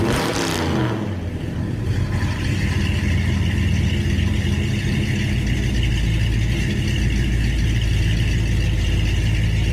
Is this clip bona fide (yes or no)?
yes